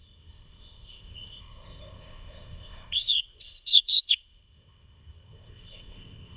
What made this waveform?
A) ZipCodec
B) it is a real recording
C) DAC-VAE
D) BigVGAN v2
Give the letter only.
A